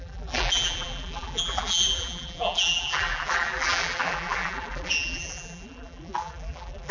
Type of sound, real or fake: fake